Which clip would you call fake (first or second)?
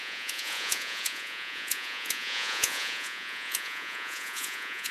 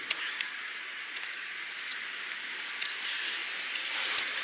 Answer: first